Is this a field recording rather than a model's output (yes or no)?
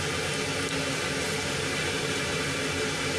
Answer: yes